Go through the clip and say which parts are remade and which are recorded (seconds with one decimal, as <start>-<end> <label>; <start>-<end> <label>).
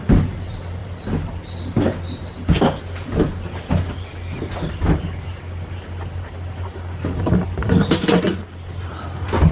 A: 0.0-9.5 recorded